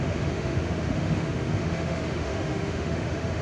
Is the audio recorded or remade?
remade